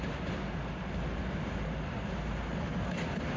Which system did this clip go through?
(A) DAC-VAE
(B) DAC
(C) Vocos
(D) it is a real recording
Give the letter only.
D